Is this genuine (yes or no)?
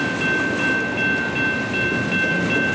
yes